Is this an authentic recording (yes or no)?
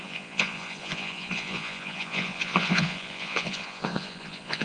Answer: no